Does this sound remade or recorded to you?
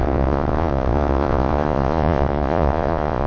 remade